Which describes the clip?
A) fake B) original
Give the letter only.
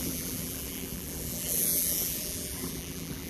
A